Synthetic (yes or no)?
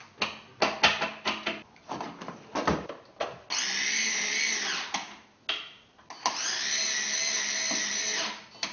no